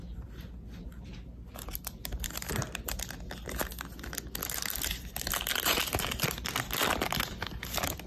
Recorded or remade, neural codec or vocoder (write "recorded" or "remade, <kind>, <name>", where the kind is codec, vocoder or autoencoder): recorded